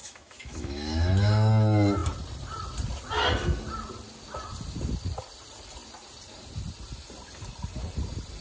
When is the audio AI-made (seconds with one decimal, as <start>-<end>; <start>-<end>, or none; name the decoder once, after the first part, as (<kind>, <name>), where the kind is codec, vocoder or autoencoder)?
0.0-1.5 (autoencoder, DAC-VAE)